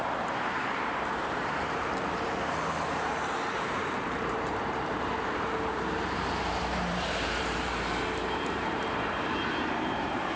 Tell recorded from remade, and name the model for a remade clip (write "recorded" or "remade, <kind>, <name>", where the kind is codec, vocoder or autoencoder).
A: remade, vocoder, BigVGAN v2